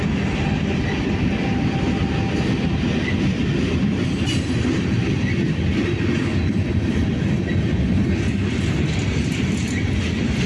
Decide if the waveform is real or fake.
real